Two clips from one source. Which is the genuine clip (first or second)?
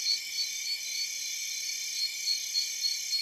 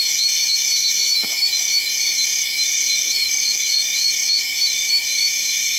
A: first